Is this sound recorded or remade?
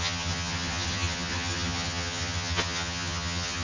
remade